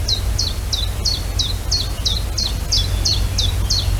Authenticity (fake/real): real